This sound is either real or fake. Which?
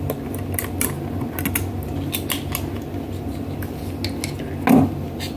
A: real